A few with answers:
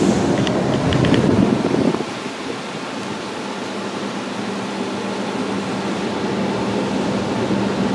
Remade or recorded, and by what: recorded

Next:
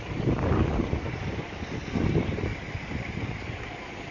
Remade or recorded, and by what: recorded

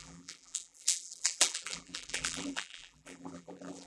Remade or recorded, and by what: remade, vocoder, BigVGAN v2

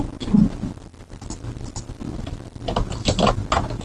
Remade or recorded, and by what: recorded